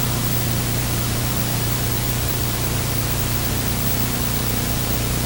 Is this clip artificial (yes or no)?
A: yes